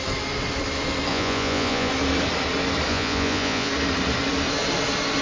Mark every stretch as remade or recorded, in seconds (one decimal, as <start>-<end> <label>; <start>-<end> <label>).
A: 0.0-1.1 recorded; 1.1-1.9 remade; 1.9-2.9 recorded; 2.9-3.7 remade; 3.7-5.2 recorded

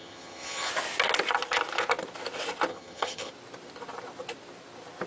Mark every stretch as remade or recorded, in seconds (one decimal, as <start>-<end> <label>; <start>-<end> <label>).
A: 0.0-0.7 remade; 0.7-2.7 recorded; 2.7-3.3 remade; 3.3-5.1 recorded

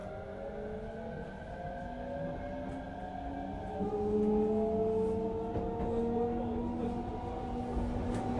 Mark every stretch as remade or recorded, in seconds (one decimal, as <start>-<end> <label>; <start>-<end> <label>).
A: 0.0-8.4 recorded

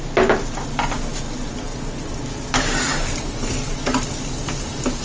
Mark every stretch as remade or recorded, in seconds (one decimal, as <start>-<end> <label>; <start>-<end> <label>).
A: 0.0-5.0 recorded

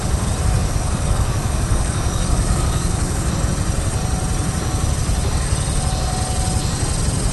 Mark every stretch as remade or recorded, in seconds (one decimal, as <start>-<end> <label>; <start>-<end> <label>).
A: 0.0-0.6 recorded; 0.6-3.3 remade; 3.3-7.3 recorded

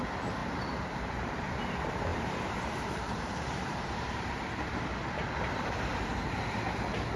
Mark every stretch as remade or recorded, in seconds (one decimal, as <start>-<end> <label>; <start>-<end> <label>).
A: 0.0-0.4 recorded; 0.4-1.7 remade; 1.7-2.1 recorded; 2.1-4.8 remade; 4.8-7.2 recorded